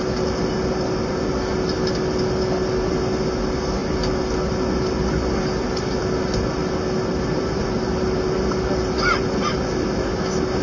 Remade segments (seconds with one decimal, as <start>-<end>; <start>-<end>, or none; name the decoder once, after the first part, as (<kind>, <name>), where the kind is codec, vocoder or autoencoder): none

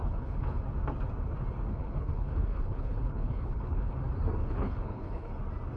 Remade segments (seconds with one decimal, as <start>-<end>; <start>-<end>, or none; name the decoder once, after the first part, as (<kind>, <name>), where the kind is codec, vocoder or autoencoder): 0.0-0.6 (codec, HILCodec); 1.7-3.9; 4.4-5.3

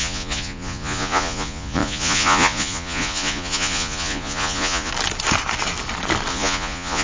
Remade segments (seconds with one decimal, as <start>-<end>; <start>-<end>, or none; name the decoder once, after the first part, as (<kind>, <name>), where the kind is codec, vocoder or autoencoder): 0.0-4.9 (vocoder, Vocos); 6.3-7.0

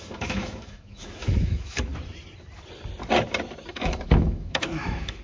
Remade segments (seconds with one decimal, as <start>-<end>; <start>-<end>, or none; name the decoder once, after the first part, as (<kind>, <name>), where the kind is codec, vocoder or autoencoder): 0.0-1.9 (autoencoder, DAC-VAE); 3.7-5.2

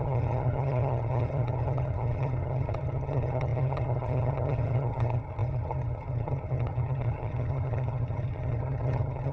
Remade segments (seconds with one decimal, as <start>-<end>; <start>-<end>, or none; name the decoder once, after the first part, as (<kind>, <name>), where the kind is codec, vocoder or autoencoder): 0.0-9.3 (vocoder, HiFi-GAN)

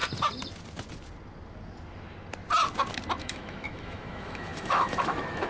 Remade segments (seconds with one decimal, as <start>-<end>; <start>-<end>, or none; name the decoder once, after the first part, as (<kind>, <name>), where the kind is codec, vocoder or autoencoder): 3.2-5.5 (autoencoder, DAC-VAE)